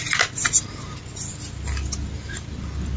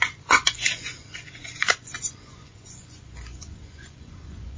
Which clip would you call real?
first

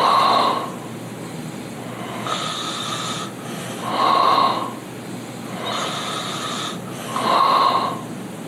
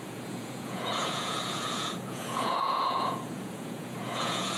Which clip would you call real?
first